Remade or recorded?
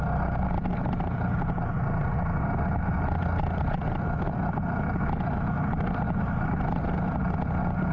recorded